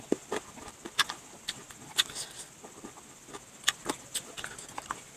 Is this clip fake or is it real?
real